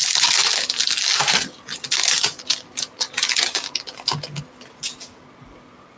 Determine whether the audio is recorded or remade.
recorded